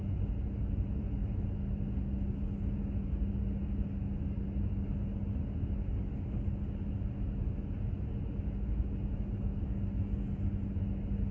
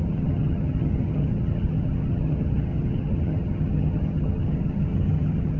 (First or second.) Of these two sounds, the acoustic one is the first